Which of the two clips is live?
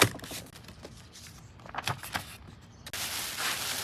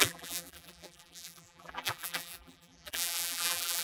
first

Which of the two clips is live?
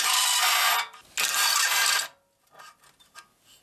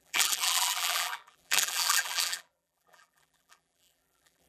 first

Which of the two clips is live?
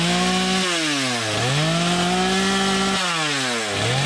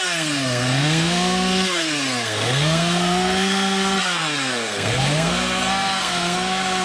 first